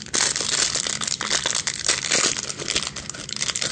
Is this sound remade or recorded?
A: recorded